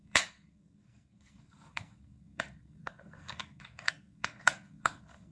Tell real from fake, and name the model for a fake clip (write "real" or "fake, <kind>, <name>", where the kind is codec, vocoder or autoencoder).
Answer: fake, codec, SNAC